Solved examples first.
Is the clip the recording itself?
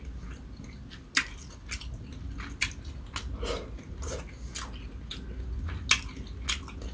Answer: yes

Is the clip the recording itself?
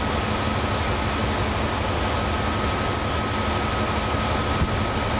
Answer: yes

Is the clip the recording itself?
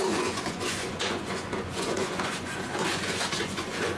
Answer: no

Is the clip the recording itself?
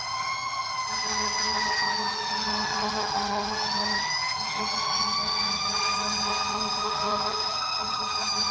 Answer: no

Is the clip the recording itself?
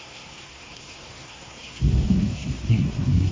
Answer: no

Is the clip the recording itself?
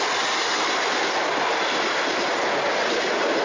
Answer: yes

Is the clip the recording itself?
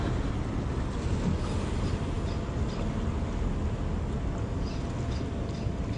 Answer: yes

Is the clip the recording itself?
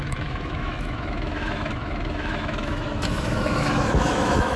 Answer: no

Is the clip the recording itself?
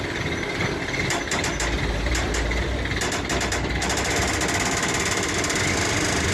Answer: yes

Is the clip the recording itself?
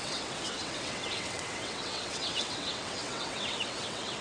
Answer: no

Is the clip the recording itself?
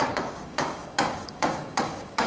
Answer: no